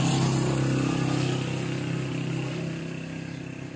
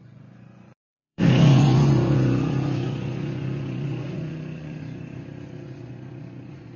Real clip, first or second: first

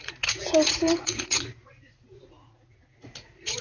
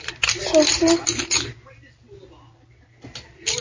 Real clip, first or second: second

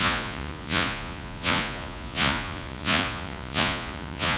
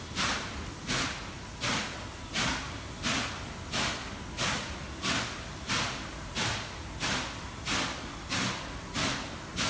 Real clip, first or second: second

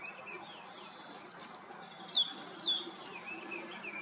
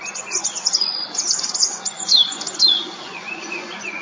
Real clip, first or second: first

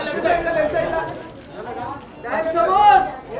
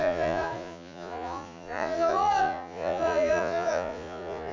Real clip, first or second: first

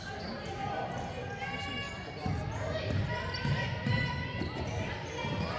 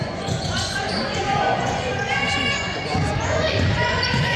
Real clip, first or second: first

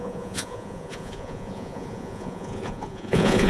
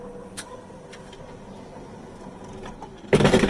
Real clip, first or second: second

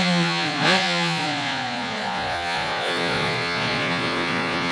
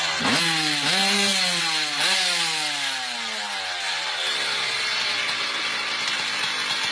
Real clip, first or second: second